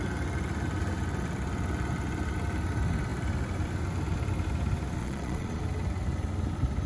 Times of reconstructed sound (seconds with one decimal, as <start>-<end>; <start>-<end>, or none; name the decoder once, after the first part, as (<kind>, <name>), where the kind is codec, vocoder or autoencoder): 5.0-5.6 (vocoder, Vocos)